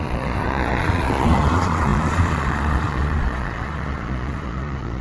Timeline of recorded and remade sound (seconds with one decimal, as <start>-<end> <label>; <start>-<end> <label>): 0.0-5.0 remade